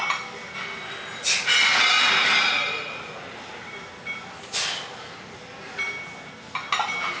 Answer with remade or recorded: recorded